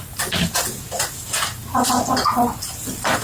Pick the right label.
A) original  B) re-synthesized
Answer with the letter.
A